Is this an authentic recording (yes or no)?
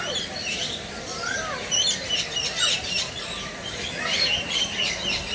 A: no